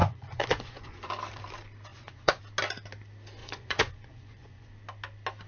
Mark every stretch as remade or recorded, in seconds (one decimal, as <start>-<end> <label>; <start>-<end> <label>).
0.0-1.1 remade; 1.1-1.9 recorded; 1.9-2.4 remade; 2.4-3.4 recorded; 3.4-4.7 remade; 4.7-5.5 recorded